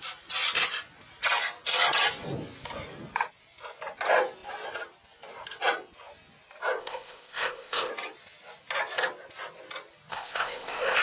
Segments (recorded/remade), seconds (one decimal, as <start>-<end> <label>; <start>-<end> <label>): 0.0-6.8 recorded; 6.8-7.9 remade; 7.9-10.1 recorded; 10.1-11.0 remade